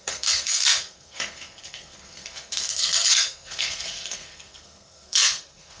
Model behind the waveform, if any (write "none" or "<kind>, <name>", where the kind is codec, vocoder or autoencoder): codec, SNAC